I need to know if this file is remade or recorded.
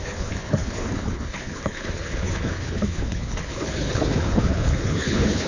remade